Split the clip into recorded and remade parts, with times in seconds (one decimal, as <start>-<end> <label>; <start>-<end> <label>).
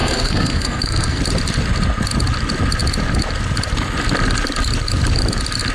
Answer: 0.0-1.2 remade; 1.2-5.7 recorded